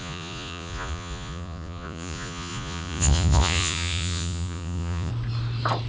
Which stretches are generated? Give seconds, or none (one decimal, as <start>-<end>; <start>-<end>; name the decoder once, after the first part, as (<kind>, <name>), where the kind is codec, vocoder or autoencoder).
0.0-5.1 (vocoder, Vocos)